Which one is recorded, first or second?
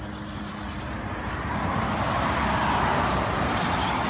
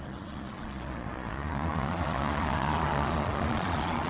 first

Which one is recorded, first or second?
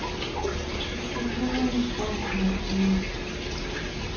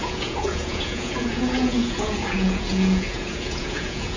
first